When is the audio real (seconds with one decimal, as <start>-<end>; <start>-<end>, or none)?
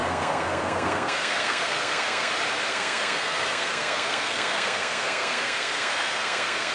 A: 2.3-2.7